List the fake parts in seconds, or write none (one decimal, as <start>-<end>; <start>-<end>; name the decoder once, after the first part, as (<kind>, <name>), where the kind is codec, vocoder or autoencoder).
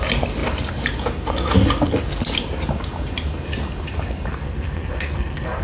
4.3-5.6 (codec, SNAC)